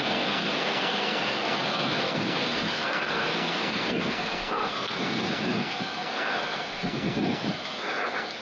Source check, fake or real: fake